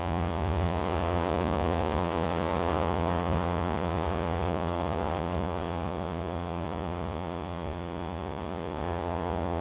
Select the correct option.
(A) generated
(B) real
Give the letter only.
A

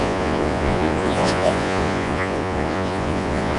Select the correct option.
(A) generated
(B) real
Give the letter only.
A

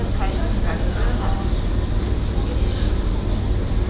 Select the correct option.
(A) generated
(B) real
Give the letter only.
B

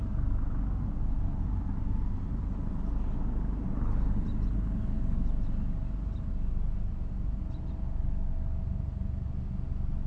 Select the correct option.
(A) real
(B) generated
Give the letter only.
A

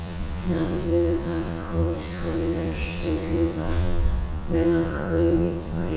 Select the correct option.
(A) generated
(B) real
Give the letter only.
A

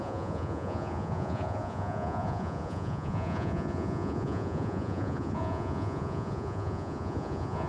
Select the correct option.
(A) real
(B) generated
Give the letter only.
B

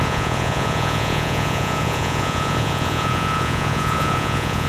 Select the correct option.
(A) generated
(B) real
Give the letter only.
A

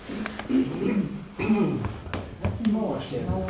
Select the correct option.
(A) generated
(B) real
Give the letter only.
B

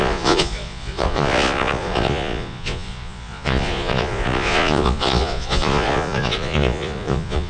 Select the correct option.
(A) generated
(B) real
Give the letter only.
A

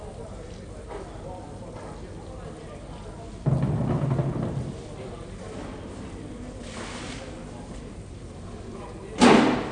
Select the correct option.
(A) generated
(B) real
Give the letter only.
B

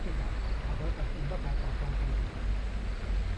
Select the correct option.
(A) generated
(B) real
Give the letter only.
B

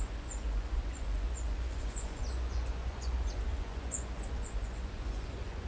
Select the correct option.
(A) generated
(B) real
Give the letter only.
A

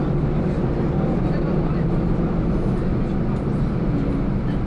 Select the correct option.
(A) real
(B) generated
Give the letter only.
A